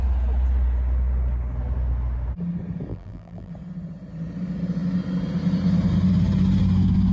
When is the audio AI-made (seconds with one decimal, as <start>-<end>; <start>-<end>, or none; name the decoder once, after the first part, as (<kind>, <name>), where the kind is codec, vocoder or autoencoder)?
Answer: 2.9-3.5 (vocoder, BigVGAN v2)